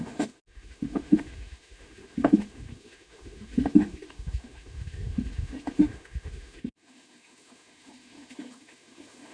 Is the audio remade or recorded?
remade